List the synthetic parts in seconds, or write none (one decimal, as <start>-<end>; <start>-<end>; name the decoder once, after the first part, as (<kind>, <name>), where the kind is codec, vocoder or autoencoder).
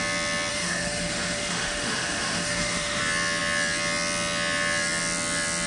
0.5-3.0 (autoencoder, DAC-VAE)